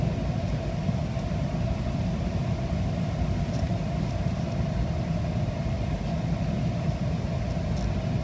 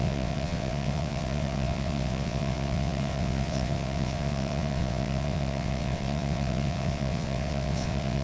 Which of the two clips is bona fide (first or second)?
first